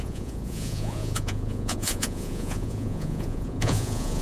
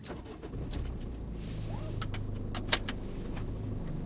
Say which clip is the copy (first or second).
first